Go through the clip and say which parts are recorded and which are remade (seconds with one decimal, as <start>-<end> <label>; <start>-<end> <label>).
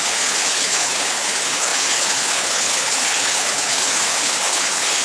0.0-5.0 remade